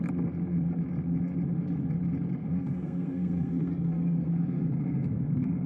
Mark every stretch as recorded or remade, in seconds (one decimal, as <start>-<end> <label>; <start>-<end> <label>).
0.0-2.4 recorded; 2.4-5.7 remade